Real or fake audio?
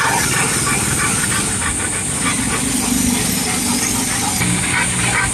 real